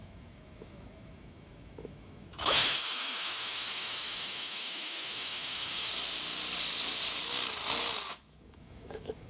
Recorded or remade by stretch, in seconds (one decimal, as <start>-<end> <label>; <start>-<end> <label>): 0.0-5.9 remade; 5.9-8.1 recorded; 8.1-9.3 remade